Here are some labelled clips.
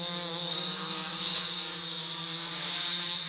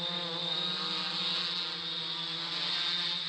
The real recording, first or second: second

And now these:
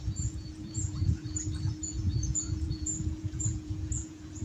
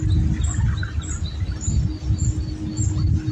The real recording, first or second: second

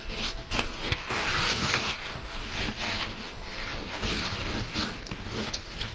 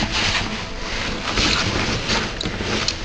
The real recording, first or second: second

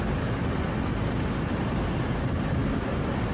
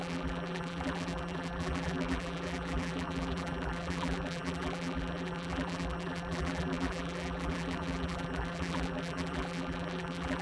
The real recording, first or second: first